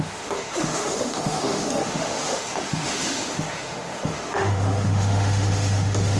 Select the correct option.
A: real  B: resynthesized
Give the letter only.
B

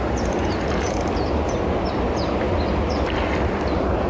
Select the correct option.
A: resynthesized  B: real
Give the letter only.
B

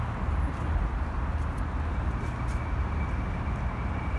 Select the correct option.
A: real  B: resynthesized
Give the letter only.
A